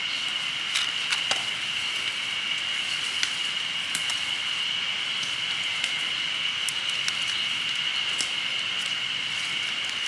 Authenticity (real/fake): real